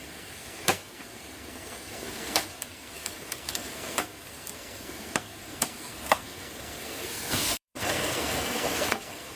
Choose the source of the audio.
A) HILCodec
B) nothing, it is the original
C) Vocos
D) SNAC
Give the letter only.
D